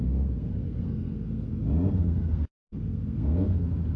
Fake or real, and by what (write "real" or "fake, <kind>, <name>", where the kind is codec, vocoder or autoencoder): fake, codec, SNAC